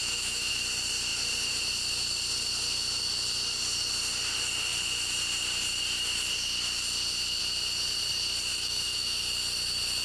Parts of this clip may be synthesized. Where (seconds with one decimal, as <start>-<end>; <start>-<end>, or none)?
0.0-0.5; 8.5-9.2

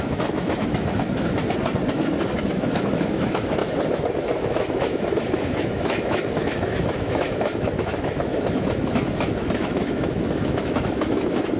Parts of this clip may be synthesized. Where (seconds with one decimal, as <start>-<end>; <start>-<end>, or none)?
0.0-1.4; 1.9-11.6

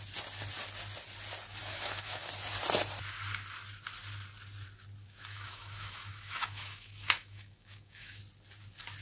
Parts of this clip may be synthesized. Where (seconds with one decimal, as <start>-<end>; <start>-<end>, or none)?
1.6-2.3; 5.0-8.2

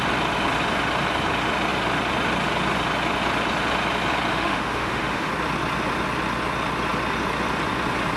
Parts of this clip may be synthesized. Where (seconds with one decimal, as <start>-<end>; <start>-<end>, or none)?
4.3-5.3

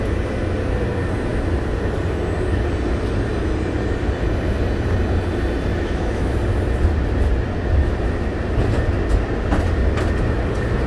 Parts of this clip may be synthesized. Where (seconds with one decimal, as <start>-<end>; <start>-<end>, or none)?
5.7-6.3